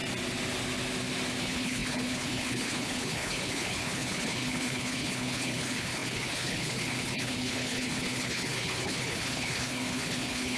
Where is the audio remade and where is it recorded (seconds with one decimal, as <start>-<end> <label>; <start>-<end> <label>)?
0.0-1.4 recorded; 1.4-10.6 remade